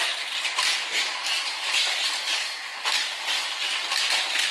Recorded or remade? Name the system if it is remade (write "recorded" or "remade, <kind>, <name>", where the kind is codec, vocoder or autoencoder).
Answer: recorded